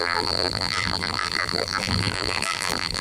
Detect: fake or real fake